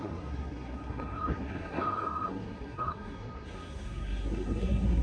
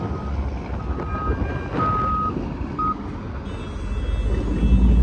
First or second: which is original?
second